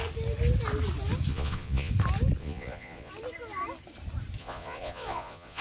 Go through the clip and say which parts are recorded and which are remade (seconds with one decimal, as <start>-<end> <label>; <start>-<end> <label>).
0.0-1.3 recorded; 1.3-1.9 remade; 1.9-2.4 recorded; 2.4-3.1 remade; 3.1-4.4 recorded; 4.4-5.6 remade